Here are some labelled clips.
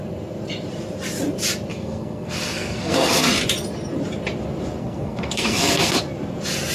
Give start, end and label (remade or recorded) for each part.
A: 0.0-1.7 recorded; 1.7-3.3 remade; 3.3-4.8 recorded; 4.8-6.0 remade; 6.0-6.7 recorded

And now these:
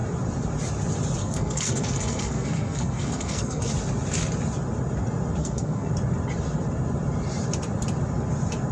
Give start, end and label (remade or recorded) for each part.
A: 0.0-1.2 recorded; 1.2-3.7 remade; 3.7-5.4 recorded; 5.4-5.9 remade; 5.9-8.7 recorded

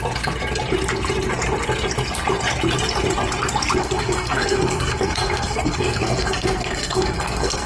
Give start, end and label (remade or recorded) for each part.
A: 0.0-3.8 recorded; 3.8-7.7 remade

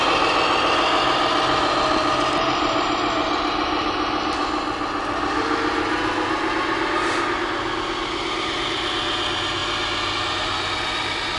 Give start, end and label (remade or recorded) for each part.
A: 0.0-11.4 recorded

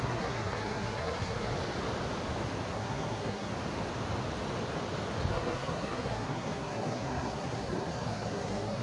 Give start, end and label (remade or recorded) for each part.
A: 0.0-1.5 remade; 1.5-2.7 recorded; 2.7-3.5 remade; 3.5-5.3 recorded; 5.3-8.8 remade

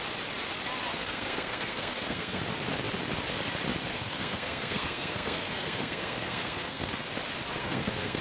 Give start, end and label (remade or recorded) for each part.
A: 0.0-0.9 recorded; 0.9-2.4 remade; 2.4-3.9 recorded; 3.9-6.9 remade; 6.9-7.6 recorded; 7.6-8.2 remade